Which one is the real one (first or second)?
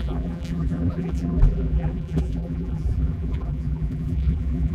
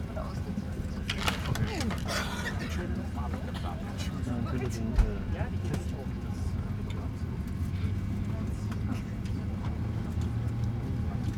second